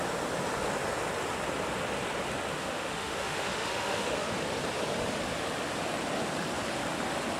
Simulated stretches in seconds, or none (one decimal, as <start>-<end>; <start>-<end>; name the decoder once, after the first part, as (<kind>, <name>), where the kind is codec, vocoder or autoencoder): 2.6-4.3 (autoencoder, DAC-VAE)